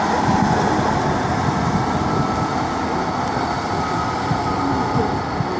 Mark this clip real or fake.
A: real